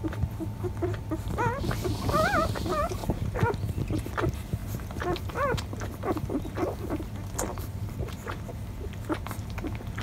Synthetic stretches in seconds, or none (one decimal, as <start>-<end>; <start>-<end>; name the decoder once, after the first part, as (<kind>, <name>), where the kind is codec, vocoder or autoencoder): 7.5-8.3 (vocoder, BigVGAN v2)

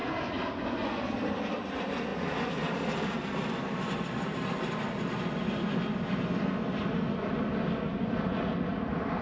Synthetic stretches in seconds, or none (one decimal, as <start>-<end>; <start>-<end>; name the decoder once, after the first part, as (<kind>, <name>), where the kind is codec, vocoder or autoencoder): none

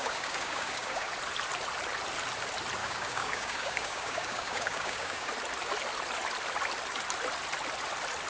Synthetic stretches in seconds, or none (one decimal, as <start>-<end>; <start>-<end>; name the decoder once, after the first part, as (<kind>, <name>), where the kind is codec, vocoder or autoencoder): 0.0-1.1 (codec, DAC); 2.8-5.3

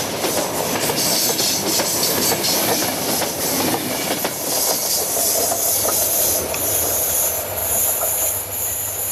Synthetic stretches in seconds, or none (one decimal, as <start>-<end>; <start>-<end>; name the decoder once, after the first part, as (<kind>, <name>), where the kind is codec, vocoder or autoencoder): none

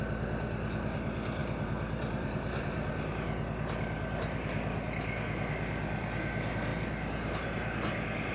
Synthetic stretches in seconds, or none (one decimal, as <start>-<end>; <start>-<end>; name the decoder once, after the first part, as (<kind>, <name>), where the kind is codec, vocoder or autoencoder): 1.4-3.1 (vocoder, BigVGAN v2)